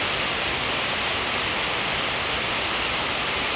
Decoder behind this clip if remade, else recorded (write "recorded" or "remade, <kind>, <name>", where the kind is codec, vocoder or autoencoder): recorded